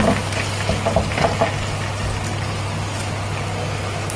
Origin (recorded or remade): recorded